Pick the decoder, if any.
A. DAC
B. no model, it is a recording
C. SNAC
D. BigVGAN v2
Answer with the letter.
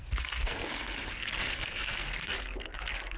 C